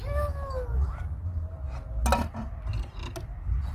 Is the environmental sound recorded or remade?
recorded